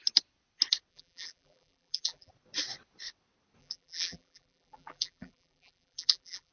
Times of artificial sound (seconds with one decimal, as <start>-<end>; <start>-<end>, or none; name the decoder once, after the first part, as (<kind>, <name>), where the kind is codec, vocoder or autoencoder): 0.9-2.3 (vocoder, BigVGAN v2); 3.6-6.5